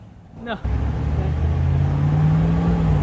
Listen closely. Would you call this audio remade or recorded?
recorded